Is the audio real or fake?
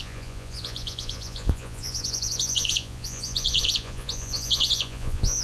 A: fake